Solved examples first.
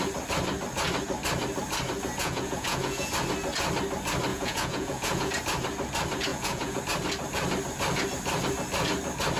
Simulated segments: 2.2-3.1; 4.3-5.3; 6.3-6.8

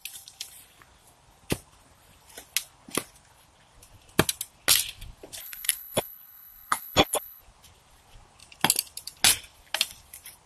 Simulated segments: 5.4-7.4

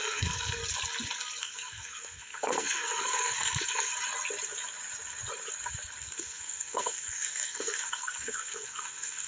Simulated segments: 0.0-0.6; 1.4-3.9; 6.0-9.3

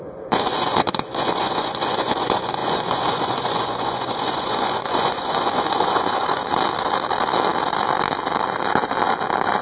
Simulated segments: 0.0-6.4

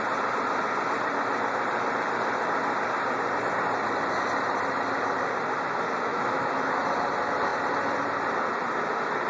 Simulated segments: 6.1-6.8

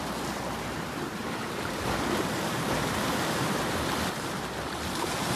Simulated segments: 1.1-2.0